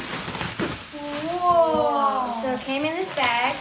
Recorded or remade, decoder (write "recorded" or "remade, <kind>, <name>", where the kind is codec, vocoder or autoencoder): recorded